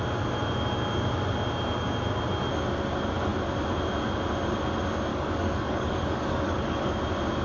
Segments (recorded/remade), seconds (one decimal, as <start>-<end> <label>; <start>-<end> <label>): 0.0-5.1 recorded; 5.1-7.0 remade; 7.0-7.4 recorded